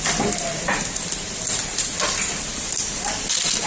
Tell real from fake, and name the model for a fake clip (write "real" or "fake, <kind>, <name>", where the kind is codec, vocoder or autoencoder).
real